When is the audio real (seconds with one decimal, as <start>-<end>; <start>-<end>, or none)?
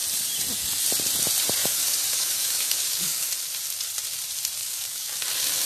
0.0-1.6; 3.3-4.6; 5.2-5.7